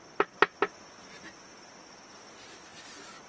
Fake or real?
real